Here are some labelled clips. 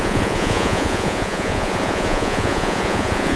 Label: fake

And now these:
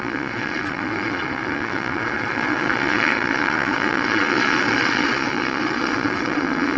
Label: fake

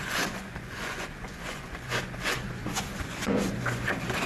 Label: fake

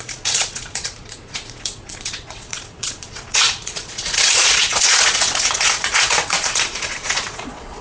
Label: fake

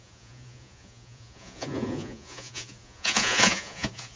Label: fake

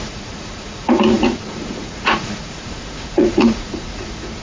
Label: fake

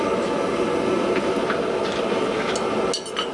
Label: real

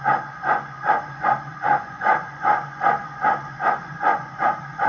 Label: fake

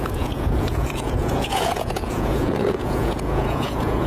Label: fake